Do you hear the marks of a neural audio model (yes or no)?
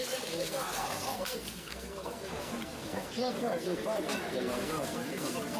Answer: yes